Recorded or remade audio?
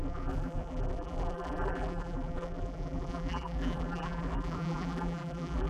remade